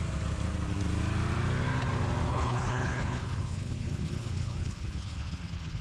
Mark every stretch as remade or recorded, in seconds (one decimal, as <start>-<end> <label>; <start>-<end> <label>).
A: 0.0-2.3 recorded; 2.3-5.8 remade